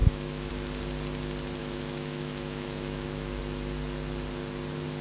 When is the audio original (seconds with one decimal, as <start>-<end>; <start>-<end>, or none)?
0.5-1.6; 3.4-5.0